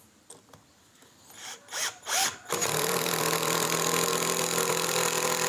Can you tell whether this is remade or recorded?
remade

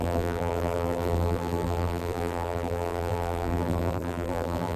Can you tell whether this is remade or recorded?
remade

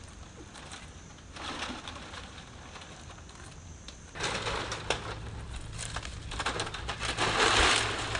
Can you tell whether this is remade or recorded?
recorded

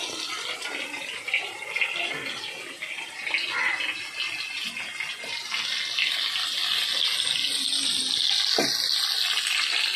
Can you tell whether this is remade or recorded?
recorded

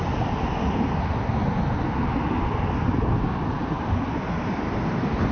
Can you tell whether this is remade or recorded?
recorded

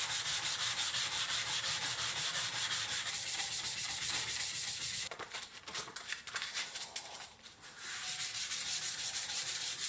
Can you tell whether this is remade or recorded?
remade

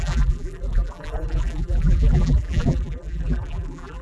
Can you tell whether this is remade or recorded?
remade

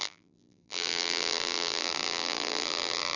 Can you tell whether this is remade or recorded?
remade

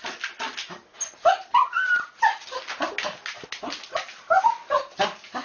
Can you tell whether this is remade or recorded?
recorded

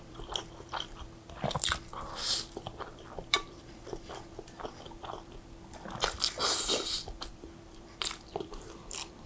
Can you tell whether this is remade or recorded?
remade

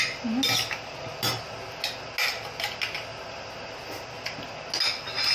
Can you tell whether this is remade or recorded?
recorded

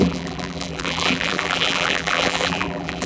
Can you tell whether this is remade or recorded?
remade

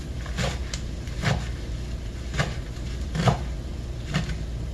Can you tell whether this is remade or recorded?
remade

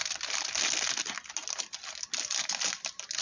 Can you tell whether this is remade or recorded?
recorded